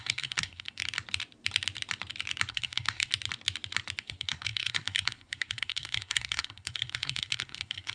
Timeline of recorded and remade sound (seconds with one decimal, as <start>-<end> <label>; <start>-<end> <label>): 0.0-0.8 remade; 0.8-2.5 recorded; 2.5-3.1 remade; 3.1-4.0 recorded; 4.0-7.9 remade